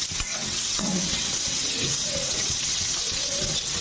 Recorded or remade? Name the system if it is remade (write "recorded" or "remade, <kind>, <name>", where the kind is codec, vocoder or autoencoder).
remade, vocoder, WaveNeXt